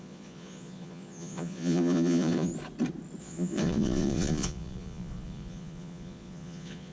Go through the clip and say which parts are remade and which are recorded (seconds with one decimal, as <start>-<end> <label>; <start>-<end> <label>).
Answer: 0.0-2.5 remade; 2.5-3.2 recorded; 3.2-6.9 remade